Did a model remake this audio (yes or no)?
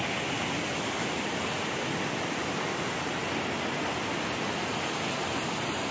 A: no